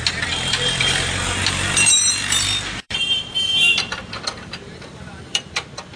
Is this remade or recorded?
remade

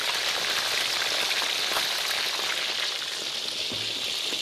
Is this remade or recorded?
recorded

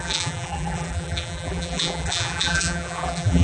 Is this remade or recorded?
remade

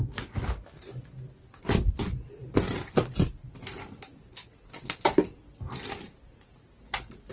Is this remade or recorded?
recorded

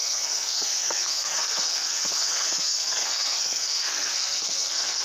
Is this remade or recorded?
remade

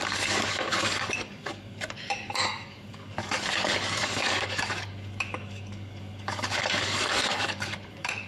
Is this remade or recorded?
remade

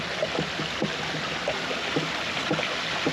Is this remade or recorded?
recorded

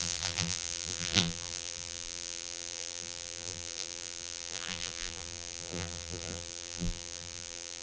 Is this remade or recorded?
remade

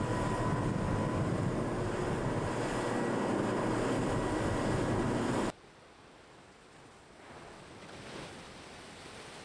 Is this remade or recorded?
recorded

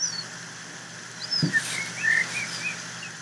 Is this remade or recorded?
recorded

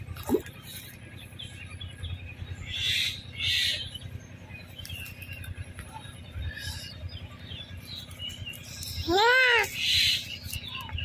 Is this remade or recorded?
recorded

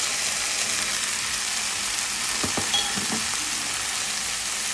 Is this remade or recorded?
recorded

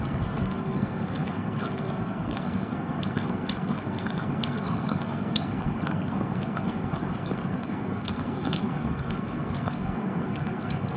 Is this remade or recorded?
remade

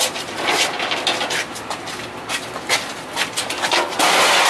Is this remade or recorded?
recorded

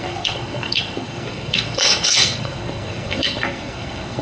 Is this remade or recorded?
remade